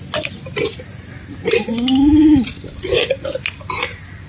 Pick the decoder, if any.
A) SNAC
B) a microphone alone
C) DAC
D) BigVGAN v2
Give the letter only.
B